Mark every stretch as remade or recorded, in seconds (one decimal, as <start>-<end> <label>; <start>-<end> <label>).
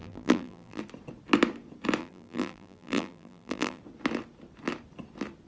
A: 0.0-0.8 remade; 0.8-2.0 recorded; 2.0-3.8 remade; 3.8-5.5 recorded